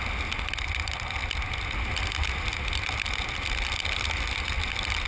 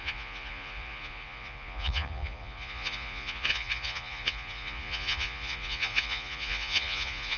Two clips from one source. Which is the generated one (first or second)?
second